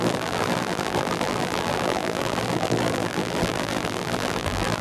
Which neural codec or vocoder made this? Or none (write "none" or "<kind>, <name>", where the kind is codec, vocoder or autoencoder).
vocoder, BigVGAN v2